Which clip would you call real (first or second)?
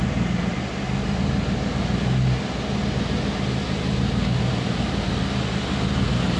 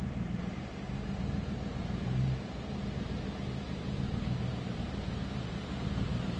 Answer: first